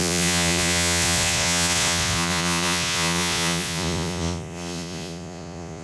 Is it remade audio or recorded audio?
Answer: remade